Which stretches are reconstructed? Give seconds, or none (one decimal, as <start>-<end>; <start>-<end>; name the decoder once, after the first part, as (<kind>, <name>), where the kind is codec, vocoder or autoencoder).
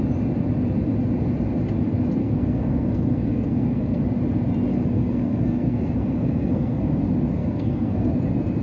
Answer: 2.2-4.0 (codec, SNAC); 4.7-7.0; 7.4-8.1